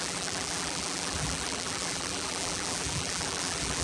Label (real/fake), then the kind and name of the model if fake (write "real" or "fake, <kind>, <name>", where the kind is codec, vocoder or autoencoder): fake, vocoder, BigVGAN v2